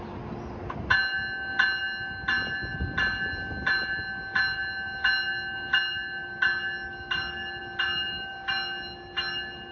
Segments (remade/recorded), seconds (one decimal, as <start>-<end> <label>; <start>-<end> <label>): 0.0-9.7 recorded